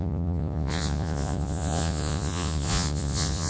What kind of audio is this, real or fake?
fake